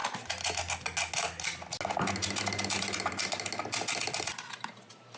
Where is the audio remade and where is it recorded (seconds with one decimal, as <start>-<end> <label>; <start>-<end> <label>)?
0.0-5.2 recorded

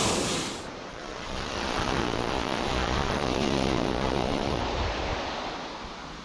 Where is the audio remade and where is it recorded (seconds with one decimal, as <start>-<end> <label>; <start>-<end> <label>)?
0.0-0.9 recorded; 0.9-4.6 remade; 4.6-6.2 recorded

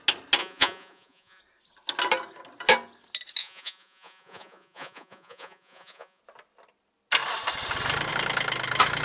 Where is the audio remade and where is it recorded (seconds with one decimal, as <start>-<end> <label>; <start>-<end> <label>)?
0.0-0.4 recorded; 0.4-1.4 remade; 1.4-3.4 recorded; 3.4-6.2 remade; 6.2-9.0 recorded

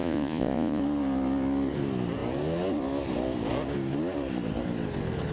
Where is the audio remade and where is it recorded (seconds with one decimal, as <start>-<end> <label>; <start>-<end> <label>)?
0.0-0.8 remade; 0.8-5.3 recorded

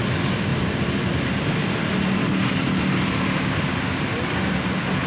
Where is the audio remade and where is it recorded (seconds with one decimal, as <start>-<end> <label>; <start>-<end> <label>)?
0.0-5.1 recorded

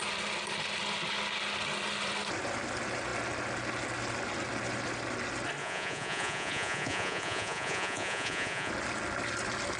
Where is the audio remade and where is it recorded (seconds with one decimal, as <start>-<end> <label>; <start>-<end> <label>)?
0.0-5.6 recorded; 5.6-8.7 remade; 8.7-9.8 recorded

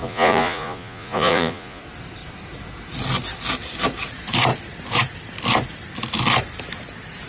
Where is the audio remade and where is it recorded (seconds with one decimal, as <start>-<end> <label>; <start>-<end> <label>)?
0.0-1.8 remade; 1.8-7.3 recorded